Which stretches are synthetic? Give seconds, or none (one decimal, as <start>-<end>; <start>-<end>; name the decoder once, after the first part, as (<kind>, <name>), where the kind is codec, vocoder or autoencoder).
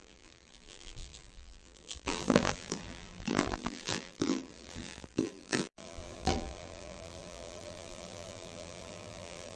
0.0-9.6 (vocoder, BigVGAN v2)